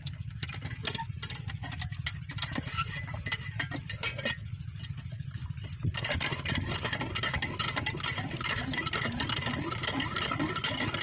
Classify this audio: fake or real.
real